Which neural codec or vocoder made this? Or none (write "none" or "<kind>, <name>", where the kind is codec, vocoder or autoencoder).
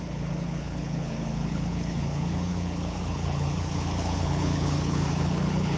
codec, HILCodec